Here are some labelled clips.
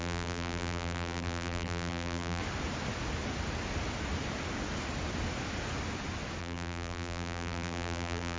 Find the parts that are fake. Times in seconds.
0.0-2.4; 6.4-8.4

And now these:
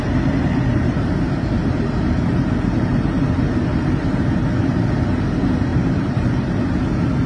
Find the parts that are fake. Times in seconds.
0.7-3.2; 3.7-4.2; 5.7-6.5

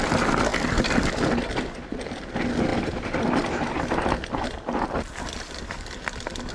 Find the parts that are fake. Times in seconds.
0.5-2.2; 2.7-5.7

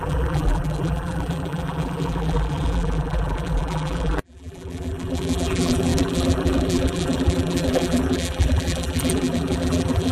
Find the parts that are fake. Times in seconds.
0.0-10.1

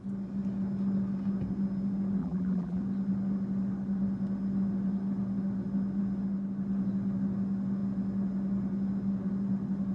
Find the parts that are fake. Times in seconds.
2.2-2.8